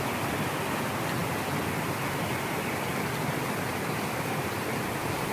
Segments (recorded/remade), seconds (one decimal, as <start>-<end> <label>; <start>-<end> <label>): 0.0-5.3 recorded